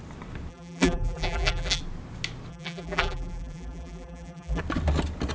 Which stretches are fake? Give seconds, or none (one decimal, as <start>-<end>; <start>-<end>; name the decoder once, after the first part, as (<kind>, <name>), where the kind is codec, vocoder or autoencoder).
0.5-1.8 (vocoder, BigVGAN v2); 2.5-4.6